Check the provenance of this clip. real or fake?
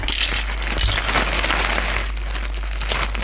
real